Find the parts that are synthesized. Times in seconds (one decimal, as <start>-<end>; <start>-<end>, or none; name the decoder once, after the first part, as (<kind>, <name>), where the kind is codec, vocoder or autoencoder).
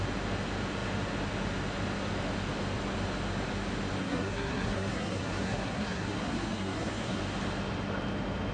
4.0-7.2 (codec, SNAC)